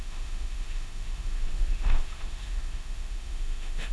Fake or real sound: fake